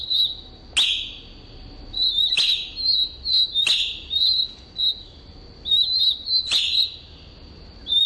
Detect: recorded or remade recorded